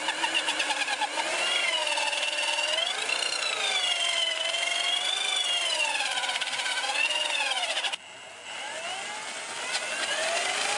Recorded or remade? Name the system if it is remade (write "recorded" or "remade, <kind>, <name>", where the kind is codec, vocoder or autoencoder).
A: recorded